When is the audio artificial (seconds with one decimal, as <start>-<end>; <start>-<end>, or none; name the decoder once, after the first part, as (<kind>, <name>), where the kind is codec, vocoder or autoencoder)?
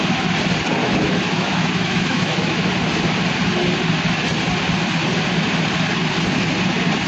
0.8-2.7 (autoencoder, DAC-VAE)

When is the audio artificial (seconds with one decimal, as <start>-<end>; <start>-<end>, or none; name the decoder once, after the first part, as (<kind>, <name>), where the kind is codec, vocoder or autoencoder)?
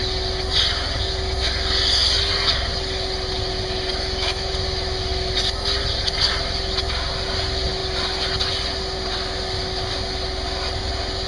3.9-4.5 (autoencoder, DAC-VAE)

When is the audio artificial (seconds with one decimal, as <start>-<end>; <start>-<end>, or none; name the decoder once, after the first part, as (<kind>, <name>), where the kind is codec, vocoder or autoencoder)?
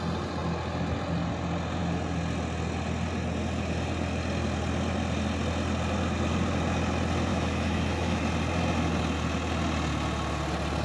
7.3-8.2 (autoencoder, DAC-VAE)